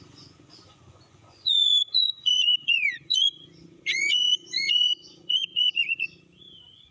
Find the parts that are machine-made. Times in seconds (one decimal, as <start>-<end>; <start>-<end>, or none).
0.0-6.9